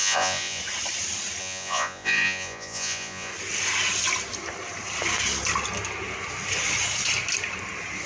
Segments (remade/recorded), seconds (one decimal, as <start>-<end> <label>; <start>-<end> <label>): 0.0-0.6 remade; 0.6-1.4 recorded; 1.4-3.3 remade; 3.3-8.1 recorded